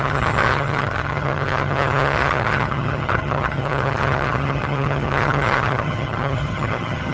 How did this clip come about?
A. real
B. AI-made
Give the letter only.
B